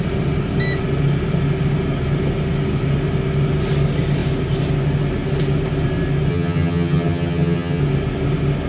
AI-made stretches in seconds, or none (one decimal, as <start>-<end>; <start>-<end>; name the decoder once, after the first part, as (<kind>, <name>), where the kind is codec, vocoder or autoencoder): 6.3-7.8 (vocoder, HiFi-GAN)